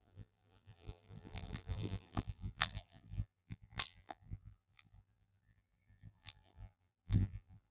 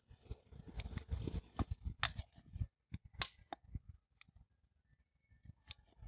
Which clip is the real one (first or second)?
second